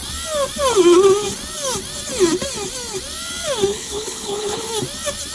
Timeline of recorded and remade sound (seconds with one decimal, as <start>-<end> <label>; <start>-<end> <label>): 0.0-3.7 recorded; 3.7-4.7 remade; 4.7-5.3 recorded